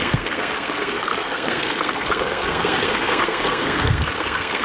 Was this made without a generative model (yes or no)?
no